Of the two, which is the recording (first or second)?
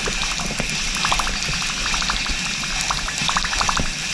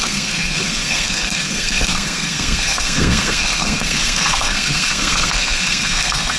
first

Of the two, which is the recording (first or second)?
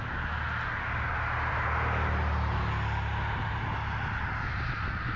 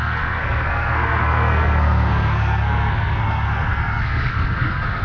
first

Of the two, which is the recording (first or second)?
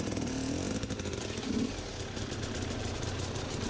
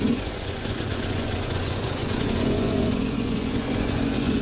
first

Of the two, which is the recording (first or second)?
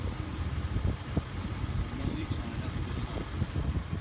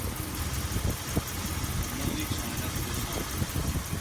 second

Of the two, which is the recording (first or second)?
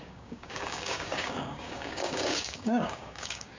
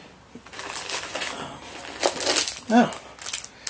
second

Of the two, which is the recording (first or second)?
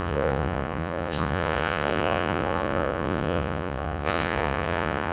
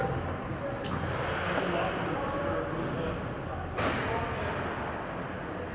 second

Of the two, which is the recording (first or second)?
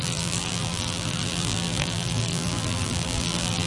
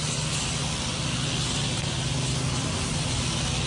second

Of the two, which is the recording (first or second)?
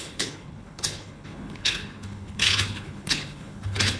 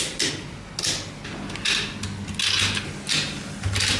second